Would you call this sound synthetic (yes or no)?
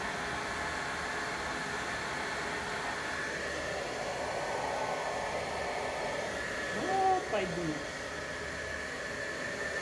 no